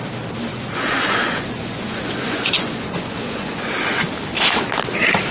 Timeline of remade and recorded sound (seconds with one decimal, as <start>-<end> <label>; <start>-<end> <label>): 0.0-0.5 recorded; 0.5-3.7 remade; 3.7-5.3 recorded